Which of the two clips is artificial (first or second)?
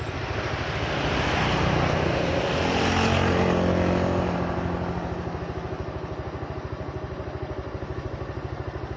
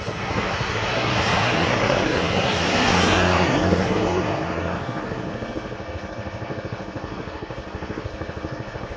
second